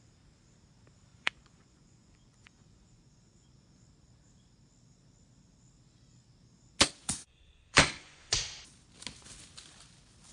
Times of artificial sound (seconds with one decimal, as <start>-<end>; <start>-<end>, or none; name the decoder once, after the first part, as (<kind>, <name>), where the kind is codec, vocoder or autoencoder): 1.1-3.8 (vocoder, Vocos); 7.0-8.4